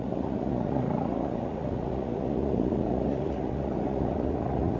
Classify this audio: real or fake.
fake